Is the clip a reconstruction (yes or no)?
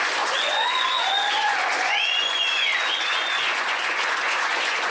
yes